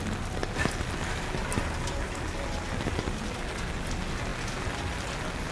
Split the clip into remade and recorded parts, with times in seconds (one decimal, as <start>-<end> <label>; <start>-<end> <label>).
0.0-5.5 recorded